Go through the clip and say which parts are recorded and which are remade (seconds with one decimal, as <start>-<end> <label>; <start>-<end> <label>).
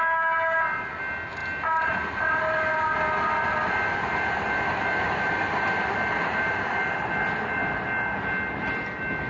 0.0-9.3 recorded